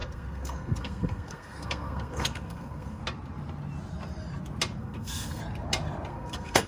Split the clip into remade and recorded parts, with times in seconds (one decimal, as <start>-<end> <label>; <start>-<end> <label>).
0.0-3.0 remade; 3.0-4.8 recorded; 4.8-5.4 remade; 5.4-6.1 recorded; 6.1-6.7 remade